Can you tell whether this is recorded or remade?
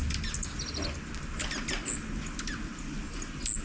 recorded